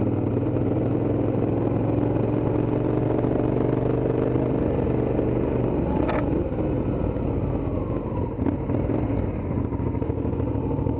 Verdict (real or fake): real